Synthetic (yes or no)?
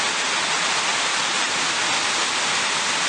no